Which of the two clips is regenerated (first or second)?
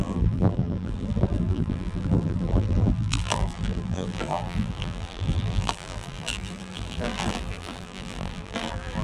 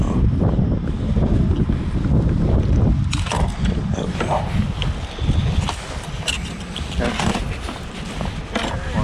first